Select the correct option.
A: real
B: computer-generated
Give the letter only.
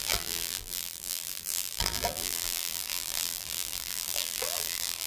B